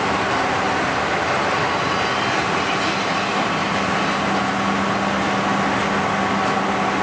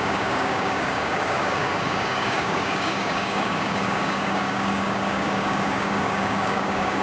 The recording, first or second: first